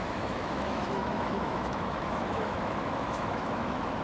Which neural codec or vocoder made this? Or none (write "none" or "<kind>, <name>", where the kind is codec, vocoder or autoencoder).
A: autoencoder, DAC-VAE